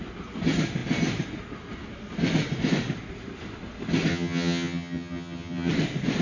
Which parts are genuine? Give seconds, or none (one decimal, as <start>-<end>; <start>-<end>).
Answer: 0.0-4.1; 5.7-6.2